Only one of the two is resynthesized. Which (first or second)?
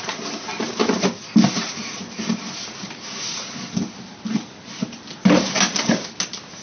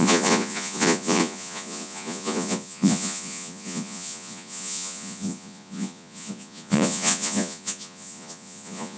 second